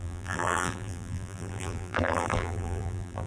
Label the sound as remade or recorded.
remade